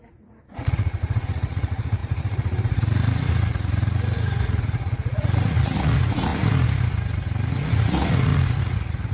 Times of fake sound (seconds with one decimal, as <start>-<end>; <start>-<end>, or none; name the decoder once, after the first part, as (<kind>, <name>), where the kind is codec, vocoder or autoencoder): 0.0-6.3 (vocoder, Vocos); 7.5-9.1